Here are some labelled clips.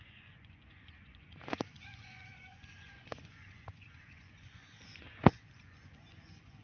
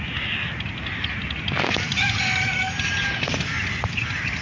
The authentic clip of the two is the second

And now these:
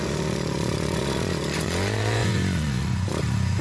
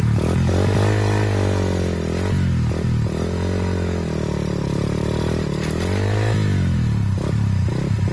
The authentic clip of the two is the second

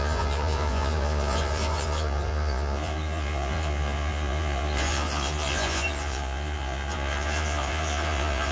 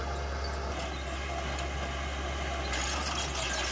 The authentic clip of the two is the second